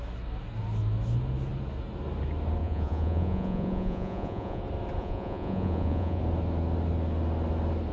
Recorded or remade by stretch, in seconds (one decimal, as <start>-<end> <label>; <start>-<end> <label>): 0.0-2.6 recorded; 2.6-4.6 remade; 4.6-5.0 recorded; 5.0-6.2 remade; 6.2-7.9 recorded